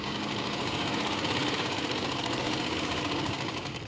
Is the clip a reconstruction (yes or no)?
yes